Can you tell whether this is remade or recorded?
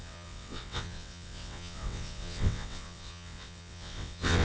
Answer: remade